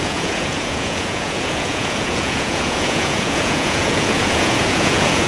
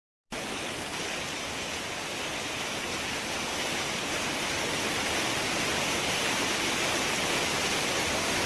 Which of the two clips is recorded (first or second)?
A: second